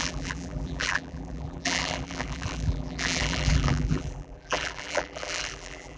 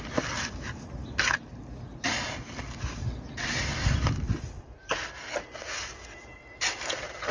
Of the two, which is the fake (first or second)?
first